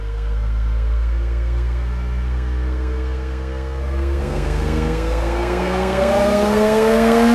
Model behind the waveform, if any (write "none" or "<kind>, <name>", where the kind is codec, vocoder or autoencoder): codec, SNAC